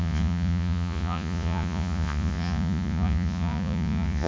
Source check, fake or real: fake